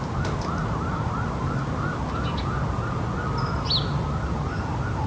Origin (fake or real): real